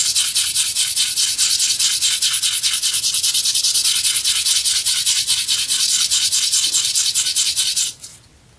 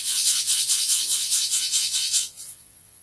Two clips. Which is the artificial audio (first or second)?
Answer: second